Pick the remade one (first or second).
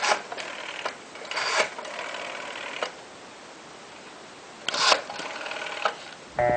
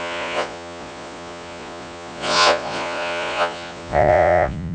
second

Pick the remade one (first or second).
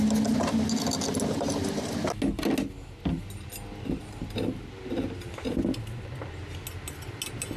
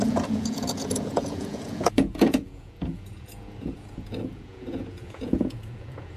second